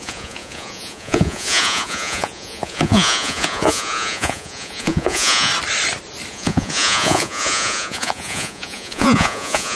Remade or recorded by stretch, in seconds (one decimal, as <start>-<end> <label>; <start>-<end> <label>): 0.0-5.5 remade; 5.5-6.3 recorded; 6.3-9.8 remade